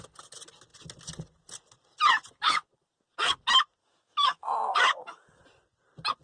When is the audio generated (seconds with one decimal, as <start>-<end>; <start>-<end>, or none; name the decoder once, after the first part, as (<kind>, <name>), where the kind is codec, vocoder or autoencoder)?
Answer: 3.8-5.4 (autoencoder, DAC-VAE)

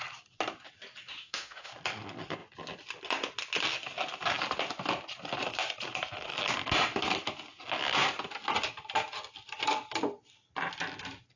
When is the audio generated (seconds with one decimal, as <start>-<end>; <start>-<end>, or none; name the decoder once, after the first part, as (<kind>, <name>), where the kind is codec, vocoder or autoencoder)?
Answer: 1.1-1.7 (autoencoder, DAC-VAE)